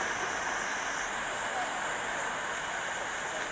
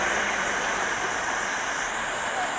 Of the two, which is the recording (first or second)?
first